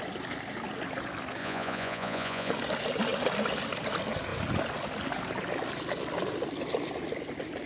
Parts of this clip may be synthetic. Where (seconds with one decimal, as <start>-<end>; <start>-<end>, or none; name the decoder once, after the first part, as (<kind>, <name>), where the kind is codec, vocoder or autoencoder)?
1.4-2.5 (vocoder, Vocos)